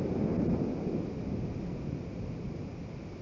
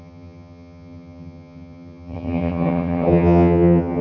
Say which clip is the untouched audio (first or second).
first